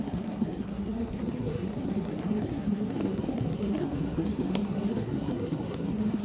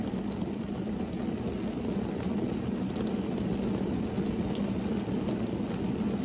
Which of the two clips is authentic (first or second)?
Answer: second